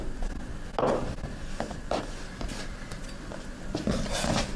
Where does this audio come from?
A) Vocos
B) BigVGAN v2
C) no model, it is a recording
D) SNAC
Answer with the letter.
C